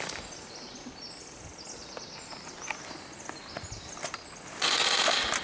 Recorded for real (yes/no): yes